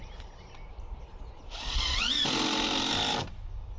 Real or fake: real